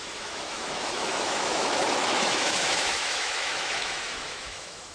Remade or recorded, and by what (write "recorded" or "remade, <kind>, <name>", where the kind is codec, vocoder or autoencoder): remade, autoencoder, DAC-VAE